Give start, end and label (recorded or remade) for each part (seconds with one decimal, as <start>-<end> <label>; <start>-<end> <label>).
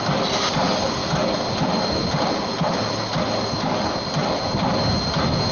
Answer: 0.0-5.5 recorded